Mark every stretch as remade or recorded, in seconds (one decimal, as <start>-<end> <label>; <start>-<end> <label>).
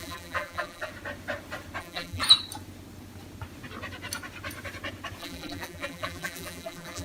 0.0-0.9 remade; 0.9-1.8 recorded; 1.8-2.2 remade; 2.2-5.2 recorded; 5.2-7.0 remade